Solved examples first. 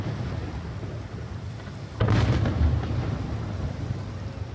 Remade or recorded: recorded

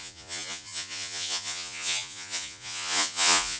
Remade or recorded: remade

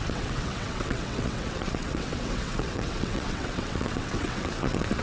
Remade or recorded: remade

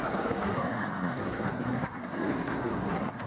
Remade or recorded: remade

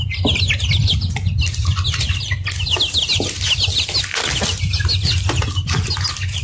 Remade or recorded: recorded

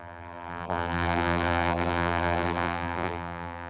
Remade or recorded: remade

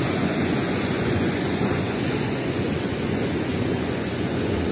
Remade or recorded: remade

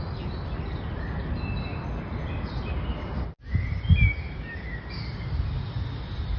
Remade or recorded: recorded